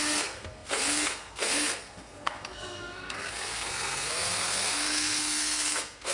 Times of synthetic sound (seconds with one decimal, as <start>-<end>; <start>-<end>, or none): 0.0-6.1